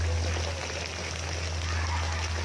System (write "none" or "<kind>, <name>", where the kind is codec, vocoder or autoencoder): none